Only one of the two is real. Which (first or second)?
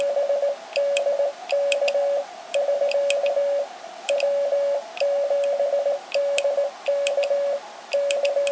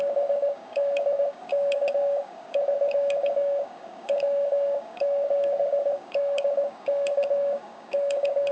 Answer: first